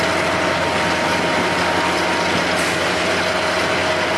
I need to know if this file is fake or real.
real